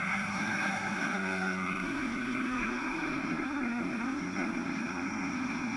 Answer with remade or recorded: remade